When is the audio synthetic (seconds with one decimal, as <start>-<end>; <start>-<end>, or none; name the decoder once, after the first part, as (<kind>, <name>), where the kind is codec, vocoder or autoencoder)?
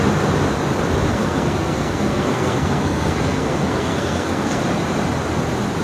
1.1-4.6 (codec, SNAC)